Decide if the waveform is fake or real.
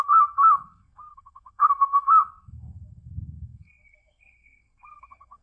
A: fake